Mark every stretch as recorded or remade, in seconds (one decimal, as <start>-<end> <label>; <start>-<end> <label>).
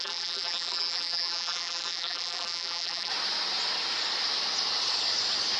0.0-3.1 remade; 3.1-5.6 recorded